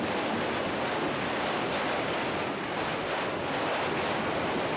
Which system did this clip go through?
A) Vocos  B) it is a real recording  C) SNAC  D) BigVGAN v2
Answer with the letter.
B